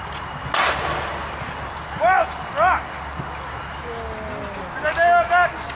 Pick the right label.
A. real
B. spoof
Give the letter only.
A